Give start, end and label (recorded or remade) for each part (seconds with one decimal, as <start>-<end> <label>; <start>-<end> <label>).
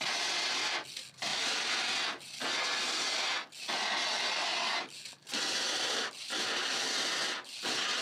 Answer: 0.0-8.0 recorded